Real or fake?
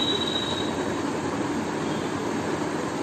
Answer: fake